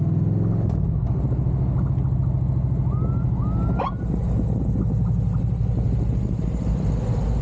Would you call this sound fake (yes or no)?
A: no